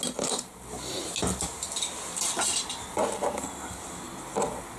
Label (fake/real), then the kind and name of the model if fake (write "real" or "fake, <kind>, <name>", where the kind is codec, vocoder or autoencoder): real